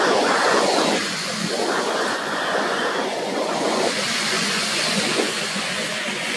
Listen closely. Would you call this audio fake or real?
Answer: fake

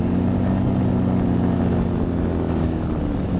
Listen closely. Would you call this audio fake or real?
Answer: real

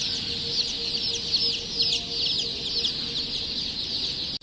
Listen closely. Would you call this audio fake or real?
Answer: real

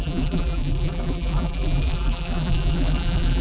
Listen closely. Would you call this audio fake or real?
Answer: fake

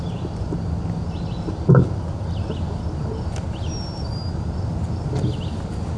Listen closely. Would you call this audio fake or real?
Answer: real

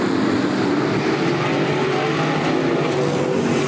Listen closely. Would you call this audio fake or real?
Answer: real